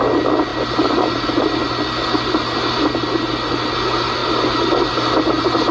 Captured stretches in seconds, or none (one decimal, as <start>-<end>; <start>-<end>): 0.0-4.2